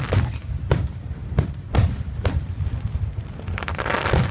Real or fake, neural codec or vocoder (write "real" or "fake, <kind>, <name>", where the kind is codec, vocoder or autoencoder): real